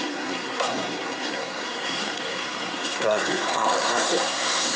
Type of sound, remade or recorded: remade